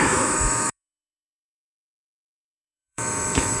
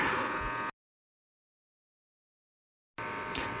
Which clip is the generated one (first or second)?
first